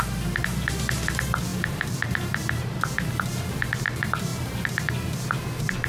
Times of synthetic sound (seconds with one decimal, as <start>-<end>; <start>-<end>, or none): 1.5-3.1; 4.3-4.9